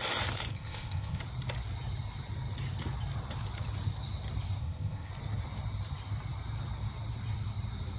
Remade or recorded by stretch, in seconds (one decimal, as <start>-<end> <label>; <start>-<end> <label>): 0.0-0.5 recorded; 0.5-1.2 remade; 1.2-4.6 recorded; 4.6-5.1 remade; 5.1-8.0 recorded